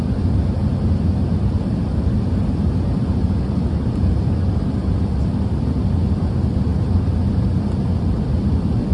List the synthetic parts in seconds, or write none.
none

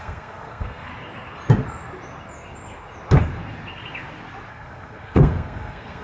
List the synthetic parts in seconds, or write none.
0.0-0.9 (codec, SNAC); 4.5-6.0

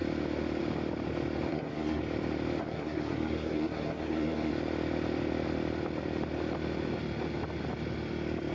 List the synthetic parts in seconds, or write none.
1.5-2.0 (codec, SNAC); 2.6-4.5

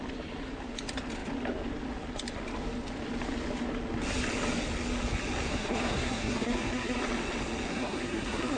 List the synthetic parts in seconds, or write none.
5.5-7.0 (codec, SNAC); 7.7-8.6

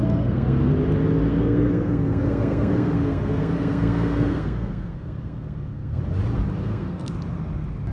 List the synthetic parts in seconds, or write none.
0.0-0.7 (codec, SNAC); 1.3-6.0; 6.6-7.1